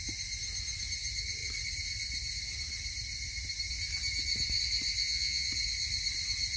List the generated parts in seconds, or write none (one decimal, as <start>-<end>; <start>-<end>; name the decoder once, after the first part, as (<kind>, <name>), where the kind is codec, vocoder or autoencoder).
5.0-5.5 (vocoder, Vocos)